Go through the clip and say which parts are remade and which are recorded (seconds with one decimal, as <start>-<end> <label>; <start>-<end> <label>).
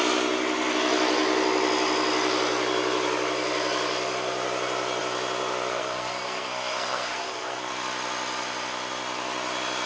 0.0-5.7 recorded; 5.7-7.7 remade; 7.7-9.9 recorded